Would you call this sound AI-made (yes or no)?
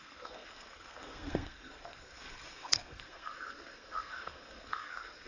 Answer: yes